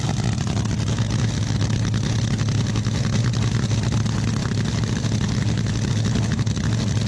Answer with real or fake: real